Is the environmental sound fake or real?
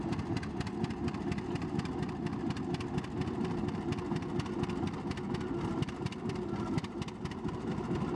fake